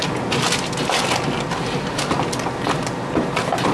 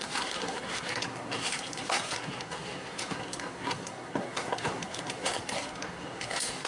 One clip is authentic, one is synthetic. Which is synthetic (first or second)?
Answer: second